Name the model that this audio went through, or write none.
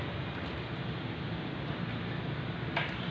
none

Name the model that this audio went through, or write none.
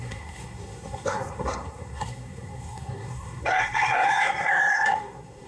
codec, SNAC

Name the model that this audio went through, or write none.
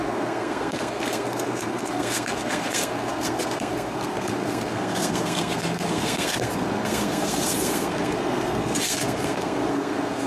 codec, SNAC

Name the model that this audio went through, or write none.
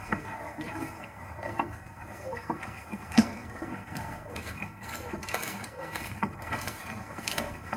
codec, SNAC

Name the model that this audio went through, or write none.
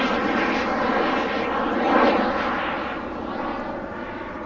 none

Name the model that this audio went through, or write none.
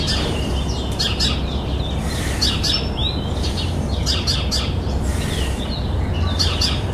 none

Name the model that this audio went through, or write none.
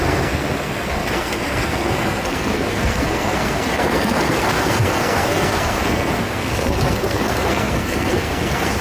codec, SNAC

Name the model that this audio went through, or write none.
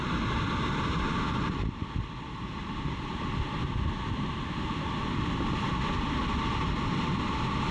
none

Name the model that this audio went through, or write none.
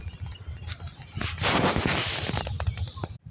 none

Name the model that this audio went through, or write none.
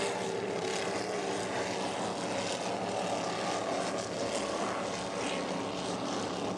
none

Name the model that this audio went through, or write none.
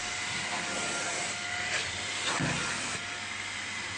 none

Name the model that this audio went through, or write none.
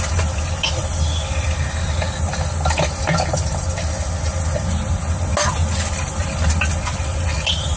none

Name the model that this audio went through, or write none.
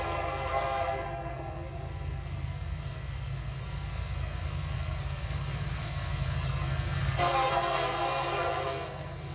codec, SNAC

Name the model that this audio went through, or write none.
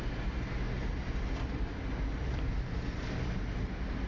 none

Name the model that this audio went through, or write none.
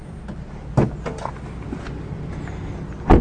none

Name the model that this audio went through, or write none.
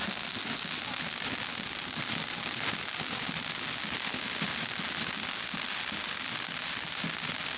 none